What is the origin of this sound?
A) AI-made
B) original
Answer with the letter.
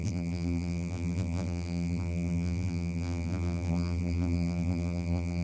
A